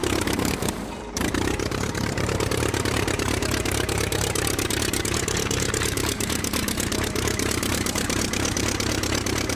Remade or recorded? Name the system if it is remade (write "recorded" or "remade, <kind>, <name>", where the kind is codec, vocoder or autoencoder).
remade, vocoder, BigVGAN v2